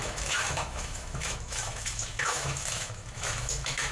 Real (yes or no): no